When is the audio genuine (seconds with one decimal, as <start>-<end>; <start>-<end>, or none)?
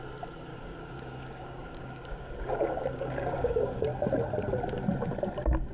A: 0.0-0.5; 3.8-5.7